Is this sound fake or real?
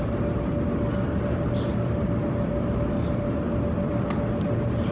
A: real